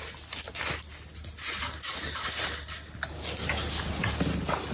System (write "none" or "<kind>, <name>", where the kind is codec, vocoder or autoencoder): none